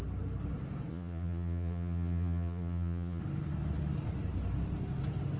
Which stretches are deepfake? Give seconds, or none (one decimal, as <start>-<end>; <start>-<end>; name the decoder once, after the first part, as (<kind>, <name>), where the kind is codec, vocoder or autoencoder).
0.9-3.2 (vocoder, Vocos)

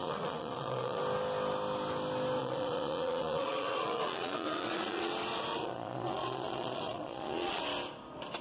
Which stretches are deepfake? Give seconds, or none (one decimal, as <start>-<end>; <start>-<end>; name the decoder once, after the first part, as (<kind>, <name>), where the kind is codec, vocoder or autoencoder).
0.0-1.0 (vocoder, Vocos); 2.4-5.1; 5.5-7.6

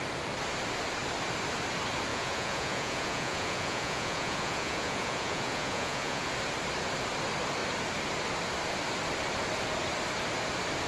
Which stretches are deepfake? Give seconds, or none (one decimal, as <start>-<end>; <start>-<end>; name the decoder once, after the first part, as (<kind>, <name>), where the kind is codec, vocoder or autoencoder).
2.1-6.3 (vocoder, Vocos)